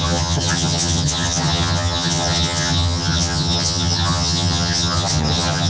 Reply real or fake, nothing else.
fake